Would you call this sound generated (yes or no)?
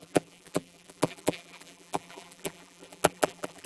yes